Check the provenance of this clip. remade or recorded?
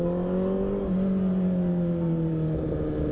recorded